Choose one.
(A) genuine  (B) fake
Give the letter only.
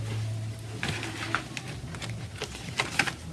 A